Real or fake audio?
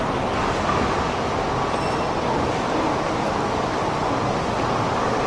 real